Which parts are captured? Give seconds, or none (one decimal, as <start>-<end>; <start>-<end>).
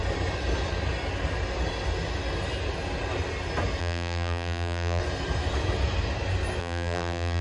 0.0-3.8; 5.0-6.6